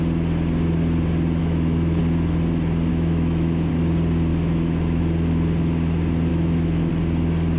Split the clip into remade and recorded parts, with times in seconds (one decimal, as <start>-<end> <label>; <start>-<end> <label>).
0.0-1.4 recorded; 1.4-2.0 remade; 2.0-2.9 recorded; 2.9-3.7 remade; 3.7-4.3 recorded; 4.3-5.0 remade; 5.0-6.3 recorded; 6.3-6.9 remade; 6.9-7.6 recorded